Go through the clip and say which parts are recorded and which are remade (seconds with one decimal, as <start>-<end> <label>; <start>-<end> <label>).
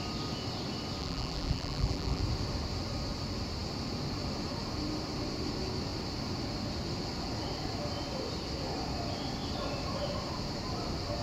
0.0-1.0 recorded; 1.0-2.2 remade; 2.2-11.2 recorded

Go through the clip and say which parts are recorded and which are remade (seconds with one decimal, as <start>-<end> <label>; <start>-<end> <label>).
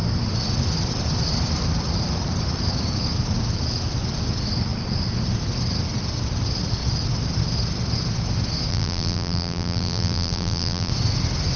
0.0-8.7 recorded; 8.7-10.9 remade; 10.9-11.6 recorded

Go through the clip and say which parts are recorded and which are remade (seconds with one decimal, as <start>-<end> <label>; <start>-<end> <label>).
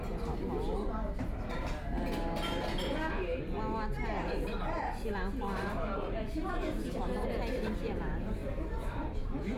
0.0-8.4 recorded; 8.4-9.6 remade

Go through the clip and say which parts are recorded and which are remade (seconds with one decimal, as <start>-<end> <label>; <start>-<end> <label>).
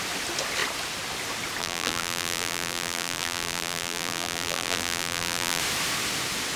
0.0-1.6 recorded; 1.6-5.6 remade; 5.6-6.6 recorded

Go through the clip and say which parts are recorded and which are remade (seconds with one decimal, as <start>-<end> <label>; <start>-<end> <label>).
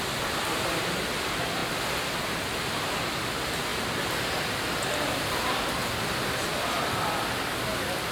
0.0-8.1 recorded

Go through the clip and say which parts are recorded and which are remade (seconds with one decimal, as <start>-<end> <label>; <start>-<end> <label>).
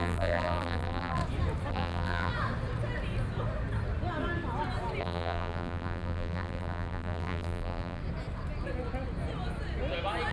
0.0-1.2 remade; 1.2-1.7 recorded; 1.7-2.3 remade; 2.3-5.0 recorded; 5.0-8.0 remade; 8.0-10.3 recorded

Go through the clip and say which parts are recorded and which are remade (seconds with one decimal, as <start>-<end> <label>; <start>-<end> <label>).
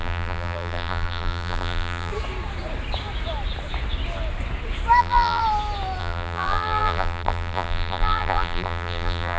0.0-2.1 remade; 2.1-5.0 recorded; 5.0-5.4 remade; 5.4-6.0 recorded; 6.0-9.4 remade